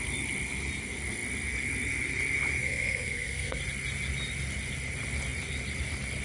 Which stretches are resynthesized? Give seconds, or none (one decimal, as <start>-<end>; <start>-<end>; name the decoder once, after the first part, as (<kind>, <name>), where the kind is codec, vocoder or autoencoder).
2.6-3.6 (codec, SNAC)